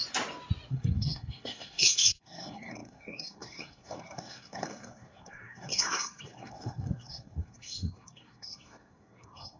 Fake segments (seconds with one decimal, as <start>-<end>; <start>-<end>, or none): 0.7-9.6